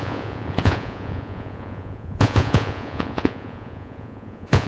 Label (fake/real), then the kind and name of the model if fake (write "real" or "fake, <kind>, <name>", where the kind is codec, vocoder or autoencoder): fake, vocoder, Vocos